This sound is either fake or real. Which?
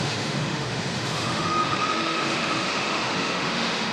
fake